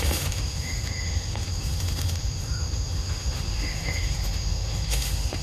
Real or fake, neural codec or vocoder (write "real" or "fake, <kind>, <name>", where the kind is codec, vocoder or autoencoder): fake, autoencoder, DAC-VAE